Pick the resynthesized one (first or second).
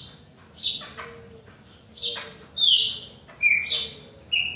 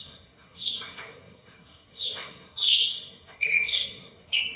second